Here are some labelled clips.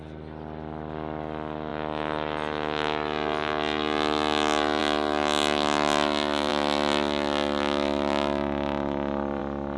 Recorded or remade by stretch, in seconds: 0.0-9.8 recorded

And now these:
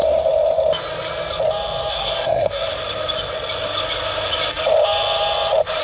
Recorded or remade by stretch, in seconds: 0.0-1.9 recorded; 1.9-2.7 remade; 2.7-5.8 recorded

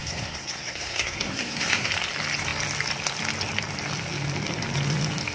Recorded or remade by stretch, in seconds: 0.0-1.9 remade; 1.9-5.3 recorded